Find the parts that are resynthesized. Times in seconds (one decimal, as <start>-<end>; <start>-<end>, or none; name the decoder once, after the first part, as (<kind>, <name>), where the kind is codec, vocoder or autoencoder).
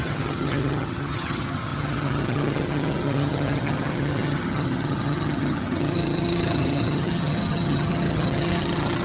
0.0-9.0 (vocoder, HiFi-GAN)